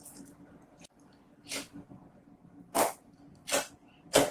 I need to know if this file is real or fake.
real